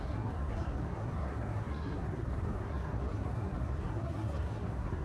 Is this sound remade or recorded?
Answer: remade